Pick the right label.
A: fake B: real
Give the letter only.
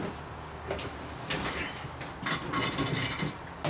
B